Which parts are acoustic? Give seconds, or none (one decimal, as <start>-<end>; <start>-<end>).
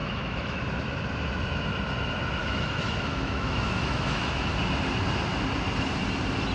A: 0.6-2.4; 4.5-6.5